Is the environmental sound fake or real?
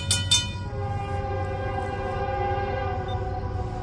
real